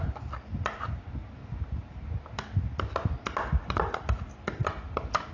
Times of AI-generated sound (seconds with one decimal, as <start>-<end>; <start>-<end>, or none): none